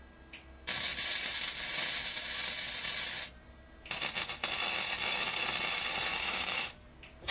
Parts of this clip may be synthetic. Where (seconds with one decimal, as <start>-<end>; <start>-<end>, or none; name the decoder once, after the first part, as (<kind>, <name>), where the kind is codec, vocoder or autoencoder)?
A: 6.1-6.7 (autoencoder, DAC-VAE)